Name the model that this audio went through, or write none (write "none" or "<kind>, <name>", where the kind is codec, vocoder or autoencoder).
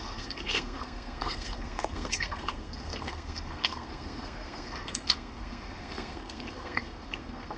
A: codec, SNAC